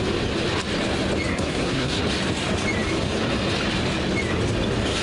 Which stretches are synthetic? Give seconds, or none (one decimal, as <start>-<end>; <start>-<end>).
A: 1.3-2.0